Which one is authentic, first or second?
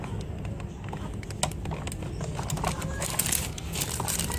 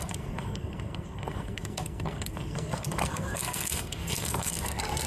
first